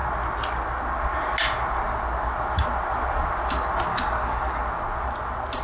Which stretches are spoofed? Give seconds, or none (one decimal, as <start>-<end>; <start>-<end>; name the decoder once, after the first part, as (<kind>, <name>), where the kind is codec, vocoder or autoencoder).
3.9-4.6 (codec, DAC)